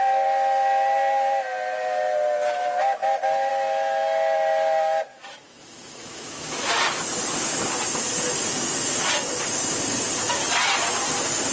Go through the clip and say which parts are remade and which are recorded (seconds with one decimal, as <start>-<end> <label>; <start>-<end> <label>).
0.0-5.1 recorded; 5.1-6.7 remade; 6.7-11.5 recorded